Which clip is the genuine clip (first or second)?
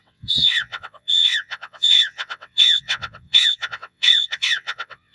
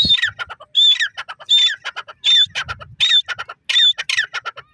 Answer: second